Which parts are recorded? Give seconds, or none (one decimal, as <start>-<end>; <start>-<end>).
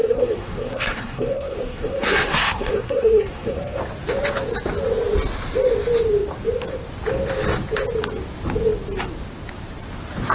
3.8-10.3